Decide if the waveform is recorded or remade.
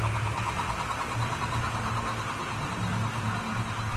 recorded